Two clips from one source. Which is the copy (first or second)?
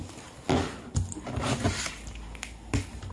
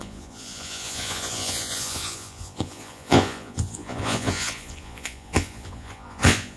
second